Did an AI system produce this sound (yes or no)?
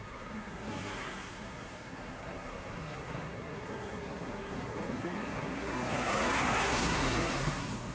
yes